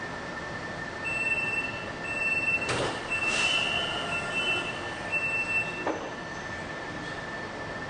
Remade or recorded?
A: recorded